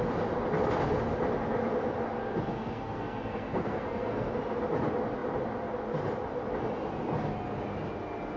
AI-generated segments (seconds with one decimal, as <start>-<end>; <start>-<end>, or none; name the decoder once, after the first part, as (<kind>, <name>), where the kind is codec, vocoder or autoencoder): 2.5-4.3 (codec, SNAC)